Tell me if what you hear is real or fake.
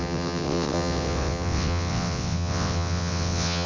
fake